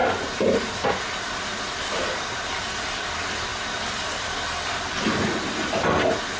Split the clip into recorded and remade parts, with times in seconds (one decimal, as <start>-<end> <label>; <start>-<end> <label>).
0.0-6.4 recorded